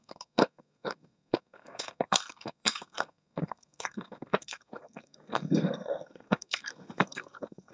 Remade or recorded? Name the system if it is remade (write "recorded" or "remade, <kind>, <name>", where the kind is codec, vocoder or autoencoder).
remade, codec, SNAC